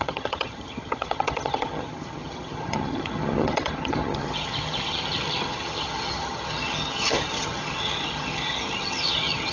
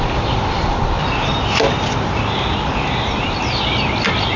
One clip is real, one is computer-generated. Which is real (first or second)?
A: second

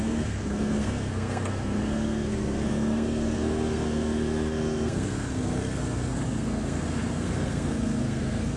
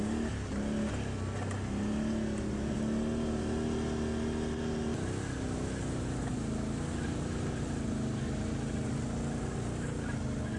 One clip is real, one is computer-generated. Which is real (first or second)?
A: second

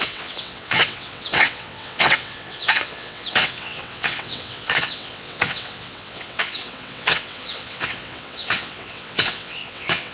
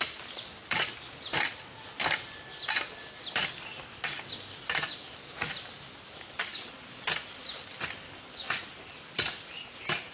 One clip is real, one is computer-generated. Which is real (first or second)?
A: second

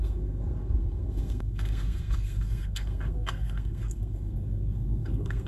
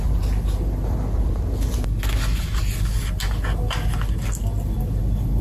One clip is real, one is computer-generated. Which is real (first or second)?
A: second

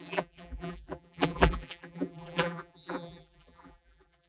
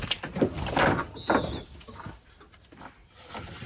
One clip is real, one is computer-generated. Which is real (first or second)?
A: second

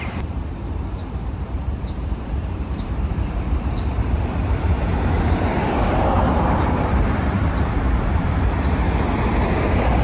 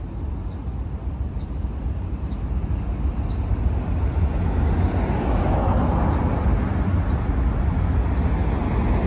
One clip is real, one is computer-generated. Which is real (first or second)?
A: second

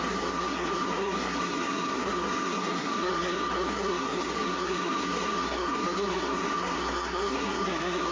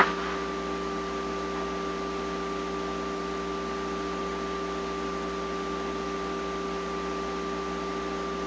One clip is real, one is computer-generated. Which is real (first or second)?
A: second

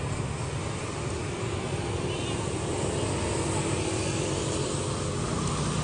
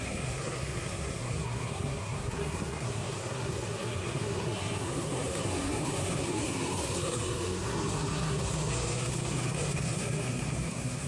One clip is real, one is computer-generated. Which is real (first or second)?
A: first